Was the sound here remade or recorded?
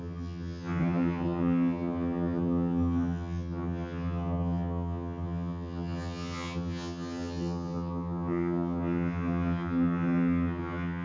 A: remade